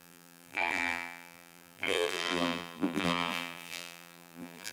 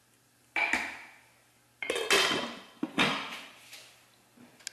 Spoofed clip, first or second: first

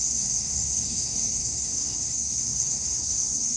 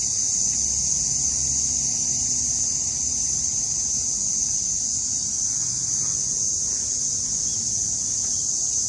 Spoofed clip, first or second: first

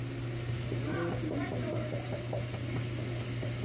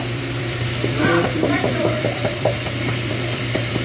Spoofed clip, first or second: second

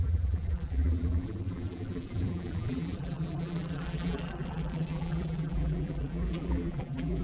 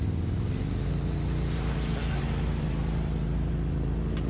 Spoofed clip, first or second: first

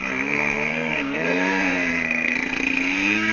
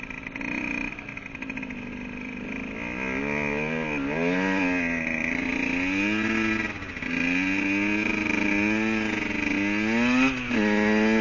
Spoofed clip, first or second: first